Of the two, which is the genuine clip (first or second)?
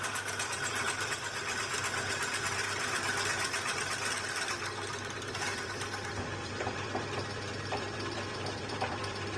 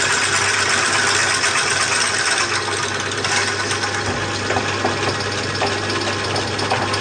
second